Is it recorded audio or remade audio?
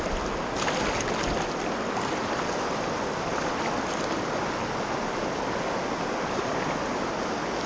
recorded